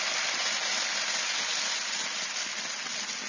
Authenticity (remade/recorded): recorded